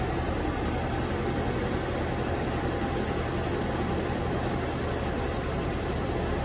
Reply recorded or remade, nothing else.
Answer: recorded